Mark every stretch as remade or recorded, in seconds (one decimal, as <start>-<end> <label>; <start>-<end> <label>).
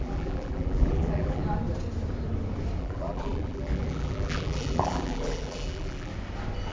0.0-1.4 remade; 1.4-2.8 recorded; 2.8-6.1 remade; 6.1-6.7 recorded